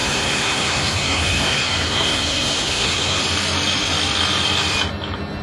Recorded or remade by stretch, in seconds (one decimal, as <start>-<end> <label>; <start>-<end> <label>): 0.0-3.2 remade; 3.2-5.4 recorded